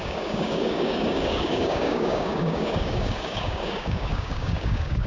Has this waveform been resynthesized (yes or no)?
yes